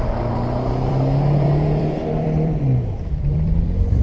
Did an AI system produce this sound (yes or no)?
yes